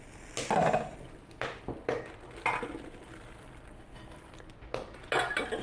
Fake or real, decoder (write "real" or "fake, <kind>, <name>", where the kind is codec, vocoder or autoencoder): real